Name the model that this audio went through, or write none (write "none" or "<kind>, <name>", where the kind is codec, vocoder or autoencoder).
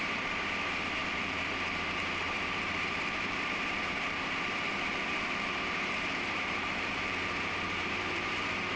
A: vocoder, BigVGAN v2